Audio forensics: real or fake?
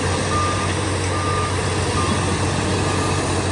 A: real